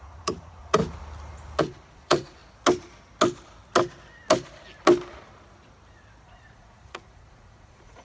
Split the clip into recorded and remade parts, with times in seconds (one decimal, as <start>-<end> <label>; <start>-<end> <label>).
0.0-0.8 remade; 0.8-1.6 recorded; 1.6-2.4 remade; 2.4-6.2 recorded; 6.2-8.0 remade